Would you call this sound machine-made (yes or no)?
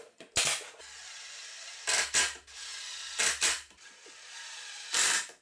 no